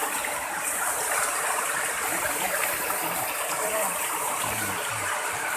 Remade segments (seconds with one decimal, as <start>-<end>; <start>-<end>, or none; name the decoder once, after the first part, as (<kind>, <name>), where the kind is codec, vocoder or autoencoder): 0.0-2.8 (vocoder, BigVGAN v2); 3.9-4.9